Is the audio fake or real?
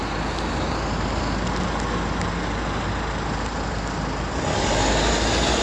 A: real